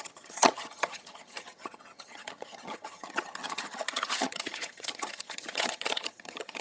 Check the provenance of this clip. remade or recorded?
remade